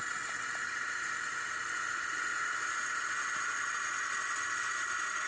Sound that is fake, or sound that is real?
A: real